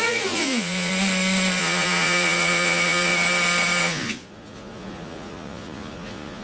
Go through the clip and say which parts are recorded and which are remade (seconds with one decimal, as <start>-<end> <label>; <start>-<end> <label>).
0.0-0.9 remade; 0.9-1.6 recorded; 1.6-3.1 remade; 3.1-3.8 recorded; 3.8-6.4 remade